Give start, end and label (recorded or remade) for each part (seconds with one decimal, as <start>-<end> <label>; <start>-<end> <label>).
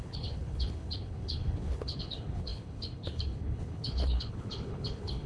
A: 0.0-5.3 remade